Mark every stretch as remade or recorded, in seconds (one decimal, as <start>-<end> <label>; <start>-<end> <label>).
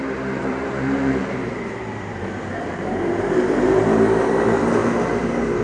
0.0-0.4 recorded; 0.4-3.8 remade; 3.8-4.8 recorded; 4.8-5.6 remade